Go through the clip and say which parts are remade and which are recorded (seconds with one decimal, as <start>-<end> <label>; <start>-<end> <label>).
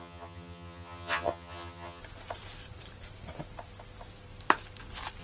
0.0-2.0 remade; 2.0-5.2 recorded